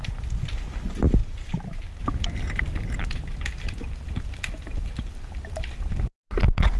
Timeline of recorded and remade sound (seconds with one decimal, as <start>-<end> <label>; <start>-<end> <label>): 0.0-6.8 recorded